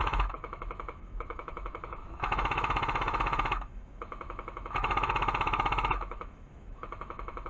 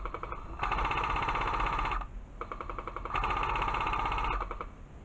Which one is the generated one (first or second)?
first